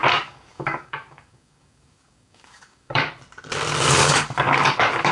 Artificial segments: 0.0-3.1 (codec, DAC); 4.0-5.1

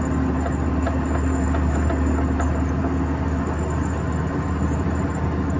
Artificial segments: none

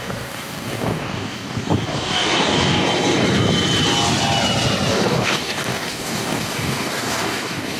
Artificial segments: 0.0-2.8 (codec, DAC); 4.9-7.8

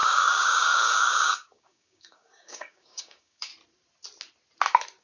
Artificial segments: 0.0-3.5 (codec, DAC)

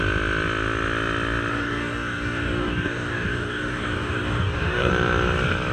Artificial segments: 1.5-4.9 (codec, DAC)

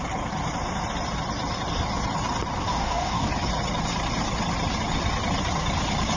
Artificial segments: 2.7-3.3 (codec, DAC)